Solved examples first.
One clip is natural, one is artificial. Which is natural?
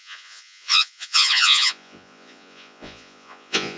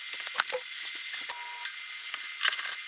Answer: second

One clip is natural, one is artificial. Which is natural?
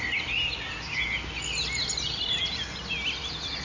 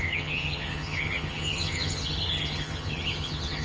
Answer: first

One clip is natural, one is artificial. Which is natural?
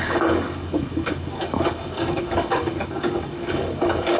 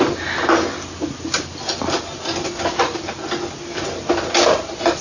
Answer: second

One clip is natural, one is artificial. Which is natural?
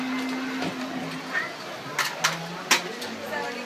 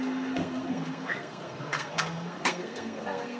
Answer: first